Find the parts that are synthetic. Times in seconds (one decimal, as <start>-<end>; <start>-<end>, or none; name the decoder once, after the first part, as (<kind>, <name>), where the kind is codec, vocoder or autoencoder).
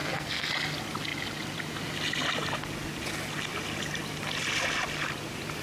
0.0-0.5 (codec, SNAC)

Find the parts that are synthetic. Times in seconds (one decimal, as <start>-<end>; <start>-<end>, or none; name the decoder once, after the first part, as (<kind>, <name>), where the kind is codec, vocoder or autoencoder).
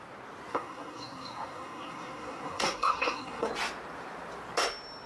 0.5-3.5 (codec, SNAC)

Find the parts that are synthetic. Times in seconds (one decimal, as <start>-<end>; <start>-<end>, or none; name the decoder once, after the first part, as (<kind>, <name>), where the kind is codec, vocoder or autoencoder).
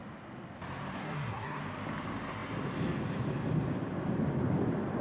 1.0-1.6 (codec, SNAC)